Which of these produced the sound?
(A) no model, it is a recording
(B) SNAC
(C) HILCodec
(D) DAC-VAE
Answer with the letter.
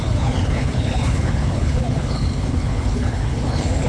C